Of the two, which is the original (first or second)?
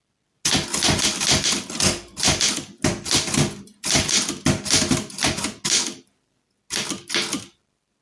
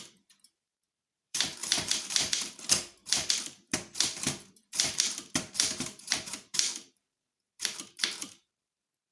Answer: first